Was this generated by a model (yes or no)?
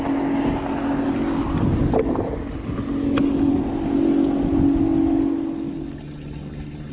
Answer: no